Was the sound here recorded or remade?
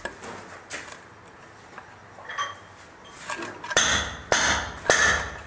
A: recorded